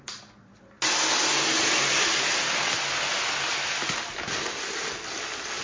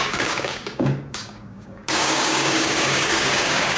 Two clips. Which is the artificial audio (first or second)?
second